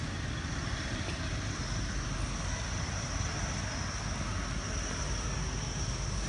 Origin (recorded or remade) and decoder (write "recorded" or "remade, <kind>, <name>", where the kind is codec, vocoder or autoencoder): recorded